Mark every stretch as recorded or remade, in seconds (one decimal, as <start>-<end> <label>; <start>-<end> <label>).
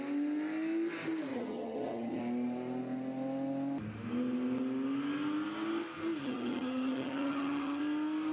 0.0-1.3 recorded; 1.3-2.2 remade; 2.2-6.2 recorded; 6.2-7.8 remade; 7.8-8.3 recorded